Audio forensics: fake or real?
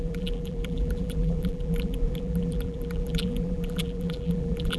fake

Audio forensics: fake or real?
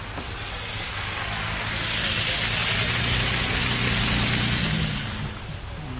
real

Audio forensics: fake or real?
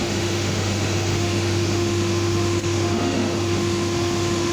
fake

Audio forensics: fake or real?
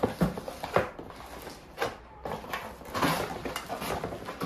real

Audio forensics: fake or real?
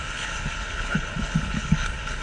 fake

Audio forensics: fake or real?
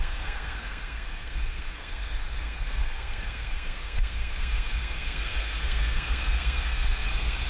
fake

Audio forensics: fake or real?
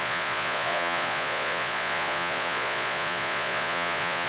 fake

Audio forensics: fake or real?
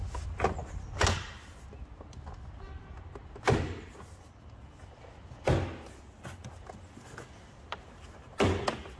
real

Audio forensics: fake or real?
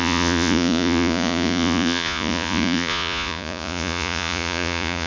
fake